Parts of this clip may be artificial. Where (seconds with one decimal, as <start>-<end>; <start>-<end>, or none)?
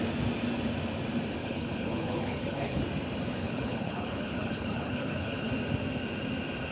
1.4-2.8; 3.4-5.5